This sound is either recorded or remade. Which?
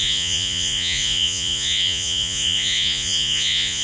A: remade